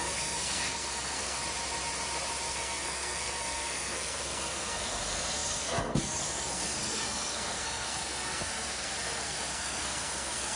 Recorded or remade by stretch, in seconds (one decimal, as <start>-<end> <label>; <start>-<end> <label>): 0.0-1.4 remade; 1.4-2.5 recorded; 2.5-10.6 remade